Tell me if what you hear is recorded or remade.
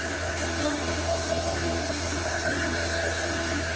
remade